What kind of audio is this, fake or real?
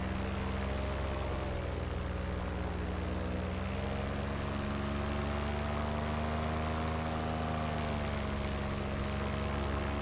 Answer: real